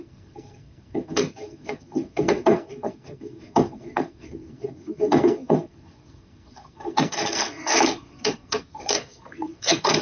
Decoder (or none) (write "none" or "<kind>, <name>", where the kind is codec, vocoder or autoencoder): codec, SNAC